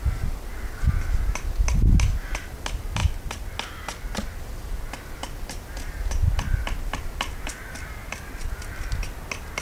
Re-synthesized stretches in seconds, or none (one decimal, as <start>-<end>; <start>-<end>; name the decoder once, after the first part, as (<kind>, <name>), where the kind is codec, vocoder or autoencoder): none